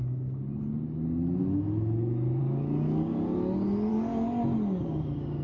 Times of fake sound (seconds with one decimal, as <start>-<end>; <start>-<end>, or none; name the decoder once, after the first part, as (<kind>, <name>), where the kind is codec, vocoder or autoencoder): none